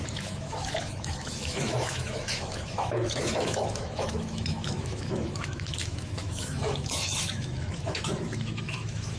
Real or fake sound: fake